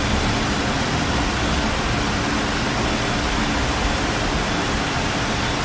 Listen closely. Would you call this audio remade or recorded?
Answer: recorded